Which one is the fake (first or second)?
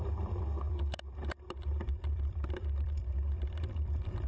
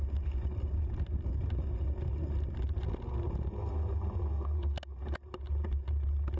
first